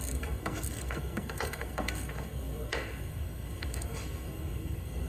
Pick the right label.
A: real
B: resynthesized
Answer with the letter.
B